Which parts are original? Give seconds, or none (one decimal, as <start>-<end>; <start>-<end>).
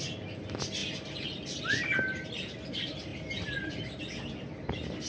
0.0-0.8; 1.6-5.1